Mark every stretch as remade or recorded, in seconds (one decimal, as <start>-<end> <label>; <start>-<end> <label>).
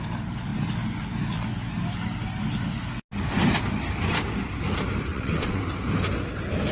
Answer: 0.0-5.1 recorded; 5.1-5.6 remade; 5.6-6.7 recorded